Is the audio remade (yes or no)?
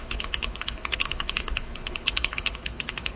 yes